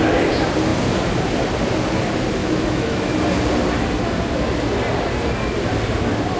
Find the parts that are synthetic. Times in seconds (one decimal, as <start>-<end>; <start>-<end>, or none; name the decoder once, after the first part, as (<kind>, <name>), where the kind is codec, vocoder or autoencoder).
2.4-3.1 (autoencoder, DAC-VAE)